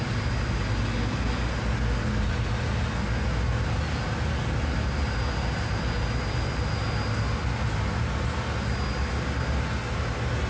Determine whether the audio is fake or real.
real